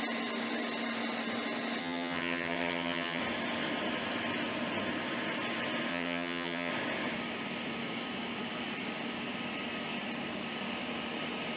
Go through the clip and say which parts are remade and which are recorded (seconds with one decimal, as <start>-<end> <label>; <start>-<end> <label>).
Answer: 0.0-1.8 recorded; 1.8-3.2 remade; 3.2-5.9 recorded; 5.9-6.7 remade; 6.7-11.6 recorded